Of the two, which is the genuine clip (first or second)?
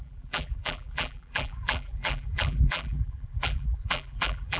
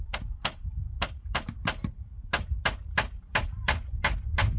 second